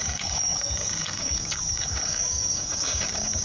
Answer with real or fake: fake